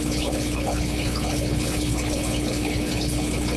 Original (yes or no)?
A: no